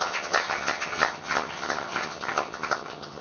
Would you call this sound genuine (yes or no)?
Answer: no